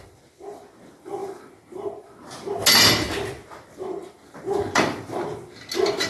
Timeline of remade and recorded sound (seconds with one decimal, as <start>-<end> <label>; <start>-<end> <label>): 0.0-6.1 recorded